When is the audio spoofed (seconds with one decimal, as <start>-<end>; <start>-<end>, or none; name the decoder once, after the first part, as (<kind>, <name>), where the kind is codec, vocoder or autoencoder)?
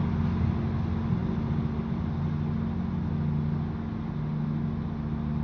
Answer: none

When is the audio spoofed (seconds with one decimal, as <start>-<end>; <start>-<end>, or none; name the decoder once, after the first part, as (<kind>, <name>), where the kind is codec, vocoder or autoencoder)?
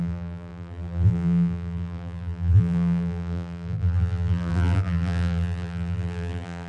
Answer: 0.0-6.7 (vocoder, BigVGAN v2)